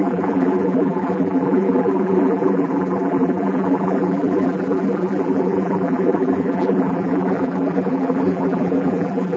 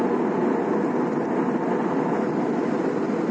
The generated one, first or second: first